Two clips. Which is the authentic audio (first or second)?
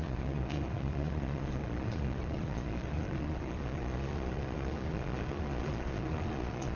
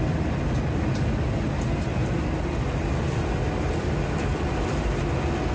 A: second